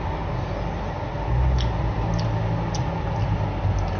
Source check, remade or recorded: recorded